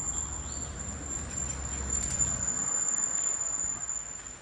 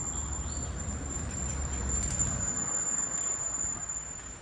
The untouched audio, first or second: first